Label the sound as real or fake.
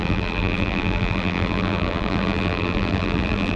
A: fake